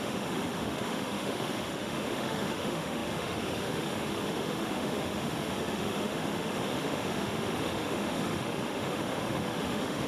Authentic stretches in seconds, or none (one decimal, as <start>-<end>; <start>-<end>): none